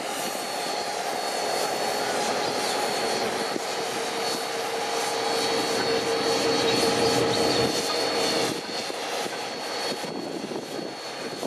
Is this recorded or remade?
recorded